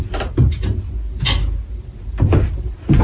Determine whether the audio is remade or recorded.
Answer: recorded